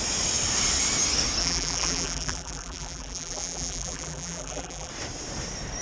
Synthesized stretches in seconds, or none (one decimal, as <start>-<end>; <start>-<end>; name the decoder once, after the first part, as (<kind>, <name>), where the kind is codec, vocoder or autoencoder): 1.4-4.9 (vocoder, BigVGAN v2)